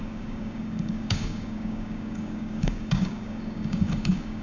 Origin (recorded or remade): remade